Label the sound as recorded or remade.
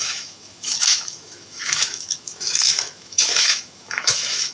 remade